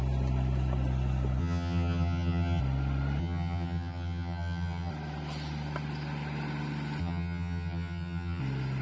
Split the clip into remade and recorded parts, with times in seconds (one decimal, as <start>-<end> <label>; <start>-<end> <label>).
0.0-1.4 recorded; 1.4-2.6 remade; 2.6-3.2 recorded; 3.2-4.9 remade; 4.9-7.0 recorded; 7.0-8.4 remade; 8.4-8.8 recorded